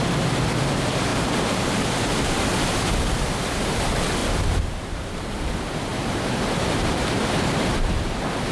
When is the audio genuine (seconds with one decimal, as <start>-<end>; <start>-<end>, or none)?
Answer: 0.0-1.1; 1.8-4.2; 5.5-5.9; 8.0-8.5